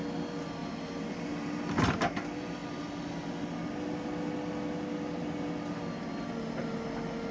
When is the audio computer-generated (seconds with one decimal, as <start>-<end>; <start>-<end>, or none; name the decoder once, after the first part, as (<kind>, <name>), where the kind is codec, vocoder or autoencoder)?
none